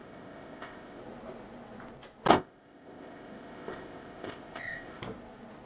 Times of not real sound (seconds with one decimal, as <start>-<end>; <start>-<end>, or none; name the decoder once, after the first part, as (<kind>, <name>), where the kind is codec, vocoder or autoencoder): 0.0-1.0 (codec, ZipCodec); 2.3-5.0

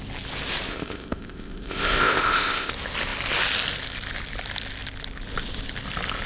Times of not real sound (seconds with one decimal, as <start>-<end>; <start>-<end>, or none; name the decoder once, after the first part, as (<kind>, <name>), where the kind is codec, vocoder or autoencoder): 0.7-2.7 (codec, ZipCodec)

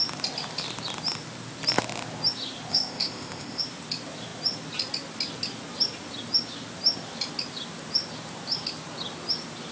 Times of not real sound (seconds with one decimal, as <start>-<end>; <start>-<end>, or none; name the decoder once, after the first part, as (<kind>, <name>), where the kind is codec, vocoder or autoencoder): 2.7-3.6 (codec, ZipCodec)

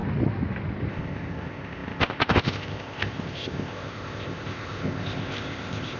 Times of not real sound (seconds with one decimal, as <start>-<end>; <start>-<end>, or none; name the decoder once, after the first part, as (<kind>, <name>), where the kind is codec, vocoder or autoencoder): 0.9-6.0 (codec, ZipCodec)

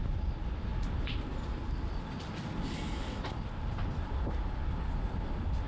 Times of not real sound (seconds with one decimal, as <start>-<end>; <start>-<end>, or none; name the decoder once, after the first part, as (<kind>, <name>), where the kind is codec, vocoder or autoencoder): none

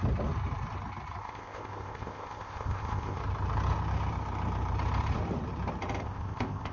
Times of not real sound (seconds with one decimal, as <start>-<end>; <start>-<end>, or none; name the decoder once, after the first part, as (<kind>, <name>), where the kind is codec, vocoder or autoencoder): 1.2-3.2 (codec, ZipCodec); 6.0-6.7